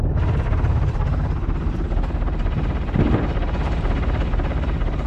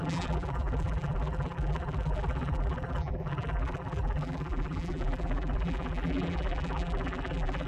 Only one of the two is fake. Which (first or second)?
second